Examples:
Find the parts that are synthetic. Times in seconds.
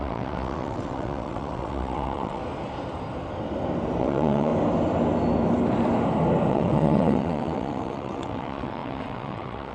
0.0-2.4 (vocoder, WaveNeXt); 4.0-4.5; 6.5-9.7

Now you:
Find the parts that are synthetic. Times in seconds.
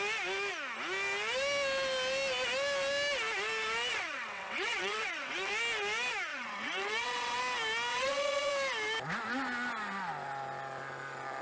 3.9-5.5 (vocoder, WaveNeXt); 6.3-7.4; 7.9-8.5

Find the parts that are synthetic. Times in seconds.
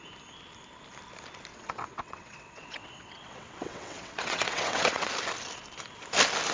1.5-5.1 (vocoder, WaveNeXt)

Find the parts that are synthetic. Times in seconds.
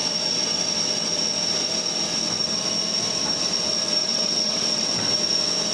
4.0-5.0 (vocoder, WaveNeXt)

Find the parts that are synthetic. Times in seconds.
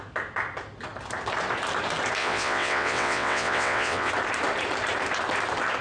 2.2-4.1 (vocoder, WaveNeXt)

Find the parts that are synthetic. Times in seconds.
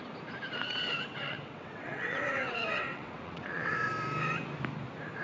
0.6-3.7 (vocoder, WaveNeXt)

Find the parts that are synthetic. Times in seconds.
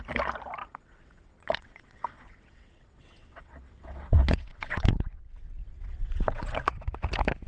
0.6-5.1 (vocoder, WaveNeXt); 5.6-6.9